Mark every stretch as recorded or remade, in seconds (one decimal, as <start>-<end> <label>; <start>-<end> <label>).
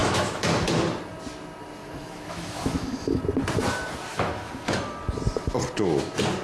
0.0-0.7 remade; 0.7-1.8 recorded; 1.8-3.2 remade; 3.2-4.1 recorded; 4.1-4.7 remade; 4.7-6.4 recorded